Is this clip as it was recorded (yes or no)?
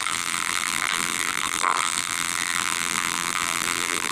no